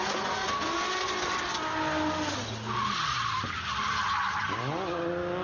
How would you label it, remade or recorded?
recorded